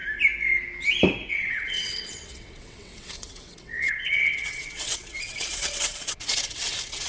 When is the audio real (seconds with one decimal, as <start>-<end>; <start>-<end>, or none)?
0.0-1.3